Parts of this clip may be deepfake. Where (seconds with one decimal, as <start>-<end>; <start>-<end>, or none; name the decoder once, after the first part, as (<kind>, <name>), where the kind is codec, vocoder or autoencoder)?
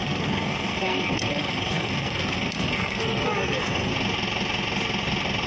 0.0-3.9 (codec, SNAC)